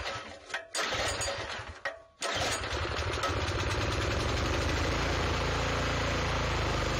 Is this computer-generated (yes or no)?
no